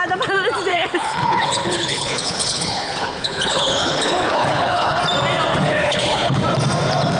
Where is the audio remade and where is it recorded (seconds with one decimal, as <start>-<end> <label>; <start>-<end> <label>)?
0.0-0.7 recorded; 0.7-5.0 remade; 5.0-5.5 recorded; 5.5-6.4 remade; 6.4-7.2 recorded